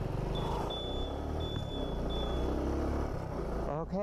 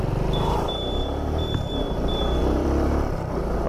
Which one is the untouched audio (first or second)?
first